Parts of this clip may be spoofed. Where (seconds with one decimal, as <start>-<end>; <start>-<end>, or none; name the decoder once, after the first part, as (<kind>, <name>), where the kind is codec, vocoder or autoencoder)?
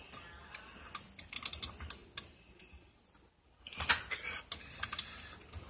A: none